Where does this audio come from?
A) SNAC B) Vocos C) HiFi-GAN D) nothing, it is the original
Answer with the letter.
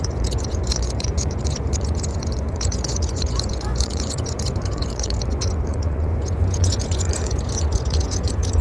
B